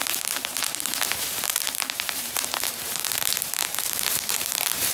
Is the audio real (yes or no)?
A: no